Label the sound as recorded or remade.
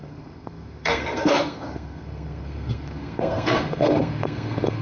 remade